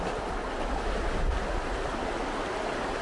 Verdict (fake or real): real